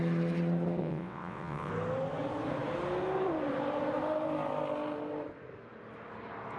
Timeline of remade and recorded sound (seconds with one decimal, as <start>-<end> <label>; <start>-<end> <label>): 0.0-0.8 recorded; 0.8-1.7 remade; 1.7-6.6 recorded